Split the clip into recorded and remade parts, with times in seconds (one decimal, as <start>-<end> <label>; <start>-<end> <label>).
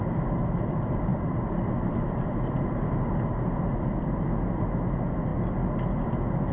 0.0-6.5 recorded